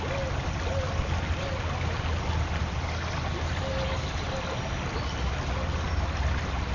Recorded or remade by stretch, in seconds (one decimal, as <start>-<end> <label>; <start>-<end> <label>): 0.0-6.7 recorded